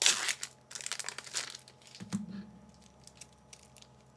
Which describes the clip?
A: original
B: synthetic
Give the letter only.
A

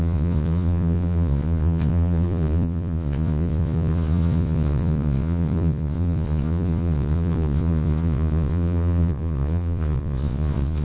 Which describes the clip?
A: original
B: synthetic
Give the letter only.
B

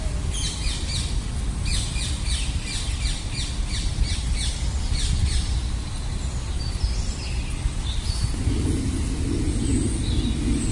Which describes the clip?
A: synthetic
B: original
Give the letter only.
B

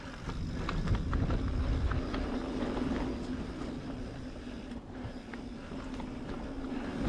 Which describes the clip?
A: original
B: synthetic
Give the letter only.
A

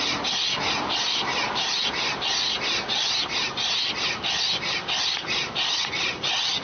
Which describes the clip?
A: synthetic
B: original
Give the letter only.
B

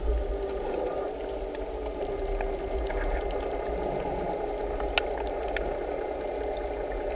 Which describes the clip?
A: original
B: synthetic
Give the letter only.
A